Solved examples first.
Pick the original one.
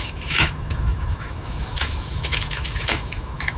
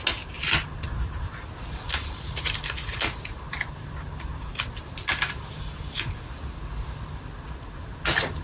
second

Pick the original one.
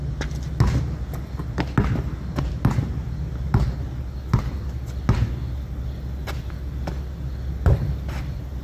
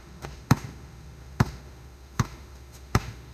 first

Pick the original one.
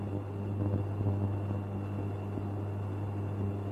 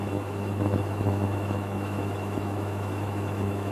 first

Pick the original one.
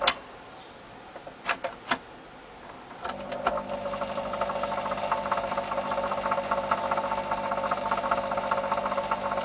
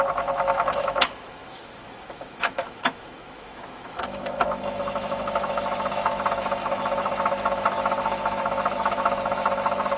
first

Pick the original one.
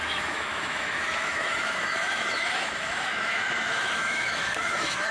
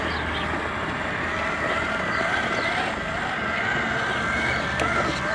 second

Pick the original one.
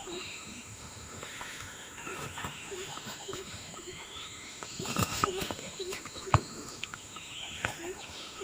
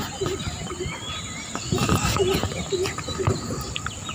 second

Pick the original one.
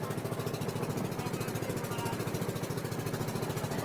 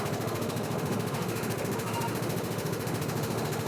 first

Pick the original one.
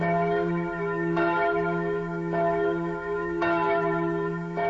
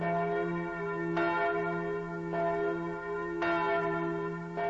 second